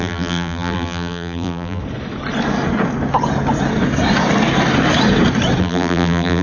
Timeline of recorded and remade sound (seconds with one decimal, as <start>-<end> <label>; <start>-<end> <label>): 0.0-1.8 remade; 1.8-5.6 recorded; 5.6-6.4 remade